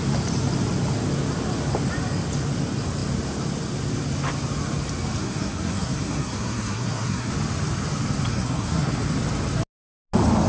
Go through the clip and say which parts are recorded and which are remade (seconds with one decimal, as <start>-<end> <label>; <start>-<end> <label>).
0.0-5.2 recorded; 5.2-7.3 remade; 7.3-8.3 recorded; 8.3-8.9 remade; 8.9-10.5 recorded